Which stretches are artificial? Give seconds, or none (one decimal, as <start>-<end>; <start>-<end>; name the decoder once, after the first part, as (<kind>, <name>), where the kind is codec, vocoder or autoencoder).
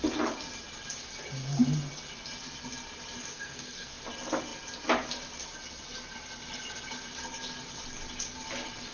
3.3-4.0 (codec, SNAC)